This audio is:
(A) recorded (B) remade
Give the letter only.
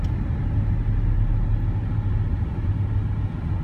A